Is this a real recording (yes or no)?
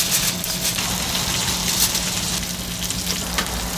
yes